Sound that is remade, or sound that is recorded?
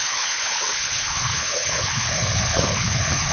remade